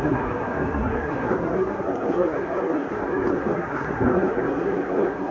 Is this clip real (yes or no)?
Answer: no